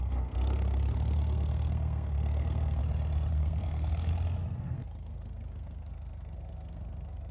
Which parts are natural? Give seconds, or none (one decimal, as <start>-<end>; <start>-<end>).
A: 2.8-3.3; 4.1-4.6